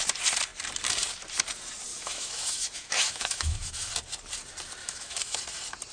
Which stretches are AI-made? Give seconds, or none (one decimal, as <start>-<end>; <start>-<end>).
1.9-3.9; 4.8-5.4